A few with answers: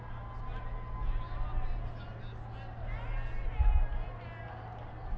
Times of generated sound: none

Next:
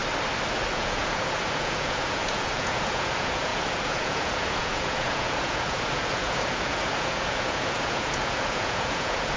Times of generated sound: 0.7-9.4

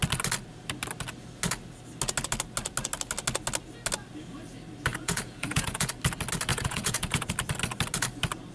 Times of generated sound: 4.9-5.9; 6.5-7.3

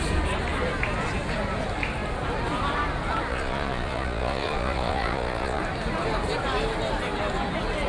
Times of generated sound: 3.3-5.6